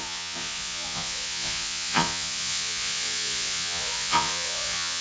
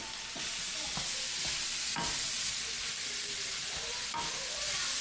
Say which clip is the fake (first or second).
first